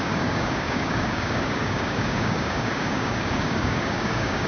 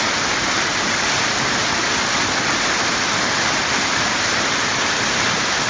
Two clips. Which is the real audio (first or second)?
second